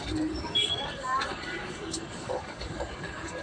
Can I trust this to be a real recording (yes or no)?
no